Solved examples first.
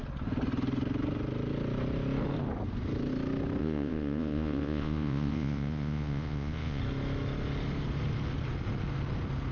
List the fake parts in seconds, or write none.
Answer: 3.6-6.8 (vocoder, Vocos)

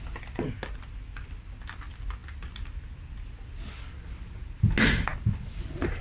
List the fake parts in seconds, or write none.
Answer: none

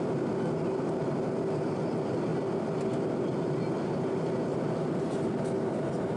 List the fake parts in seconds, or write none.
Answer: none

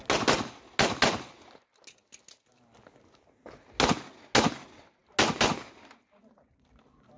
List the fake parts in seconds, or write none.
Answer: none

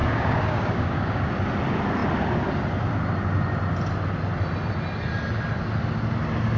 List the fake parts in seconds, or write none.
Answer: 0.0-1.3 (codec, DAC)

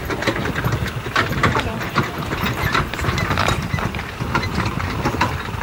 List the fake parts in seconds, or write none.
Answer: 1.4-4.8 (vocoder, BigVGAN v2)

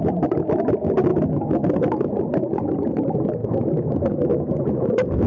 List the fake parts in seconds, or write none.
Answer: 1.1-2.1 (autoencoder, DAC-VAE); 3.4-5.3

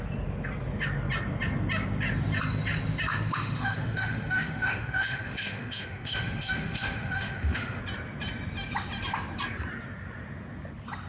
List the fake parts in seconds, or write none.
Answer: 3.1-7.8 (autoencoder, DAC-VAE)